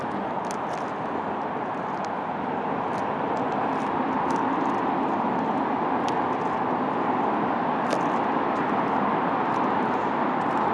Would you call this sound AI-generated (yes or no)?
no